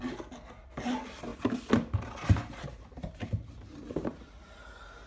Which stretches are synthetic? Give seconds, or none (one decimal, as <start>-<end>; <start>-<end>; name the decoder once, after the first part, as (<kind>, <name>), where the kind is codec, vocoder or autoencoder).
none